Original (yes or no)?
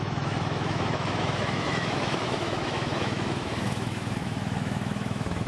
no